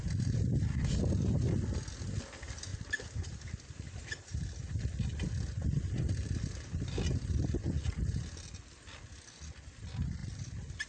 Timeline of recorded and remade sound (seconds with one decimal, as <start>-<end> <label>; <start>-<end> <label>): 0.0-2.7 recorded; 2.7-4.4 remade; 4.4-10.9 recorded